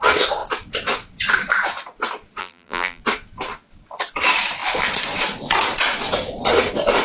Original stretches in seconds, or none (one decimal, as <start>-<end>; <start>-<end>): 0.0-2.4; 3.0-7.0